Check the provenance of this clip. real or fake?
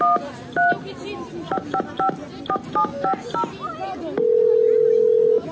real